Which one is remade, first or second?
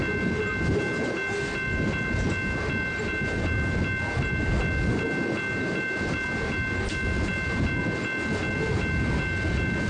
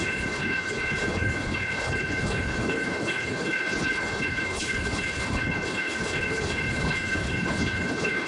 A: second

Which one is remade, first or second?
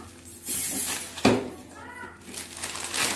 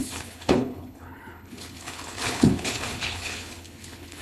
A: second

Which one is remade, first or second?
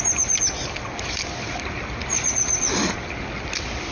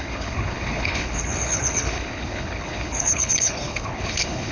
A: second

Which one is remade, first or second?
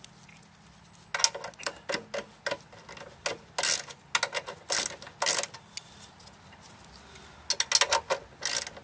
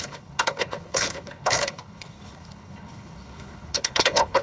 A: second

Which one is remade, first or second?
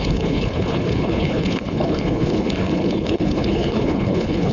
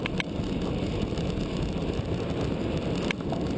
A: first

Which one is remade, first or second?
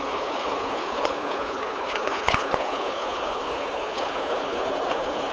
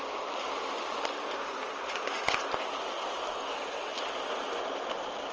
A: first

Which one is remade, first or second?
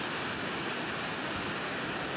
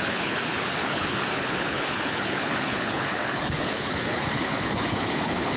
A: second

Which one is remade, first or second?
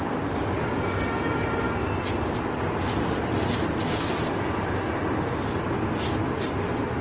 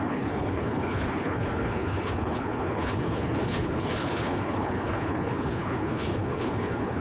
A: second